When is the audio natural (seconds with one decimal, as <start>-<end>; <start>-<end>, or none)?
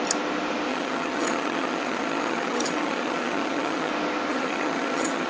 0.0-0.7; 3.9-4.3